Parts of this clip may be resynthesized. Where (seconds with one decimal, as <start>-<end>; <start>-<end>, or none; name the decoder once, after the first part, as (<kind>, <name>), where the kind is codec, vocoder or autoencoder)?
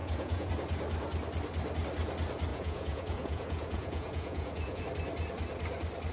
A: 0.0-0.5 (vocoder, Vocos); 2.5-4.8